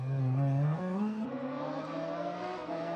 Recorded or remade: remade